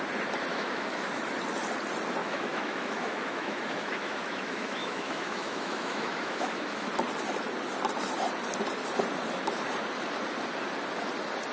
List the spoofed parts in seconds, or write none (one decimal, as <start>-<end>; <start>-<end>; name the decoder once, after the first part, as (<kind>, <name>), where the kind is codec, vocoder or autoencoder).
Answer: 0.5-1.2 (autoencoder, DAC-VAE); 2.2-6.9